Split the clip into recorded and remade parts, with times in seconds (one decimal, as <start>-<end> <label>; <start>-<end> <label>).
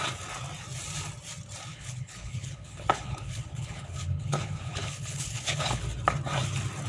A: 0.0-1.7 recorded; 1.7-5.8 remade; 5.8-6.9 recorded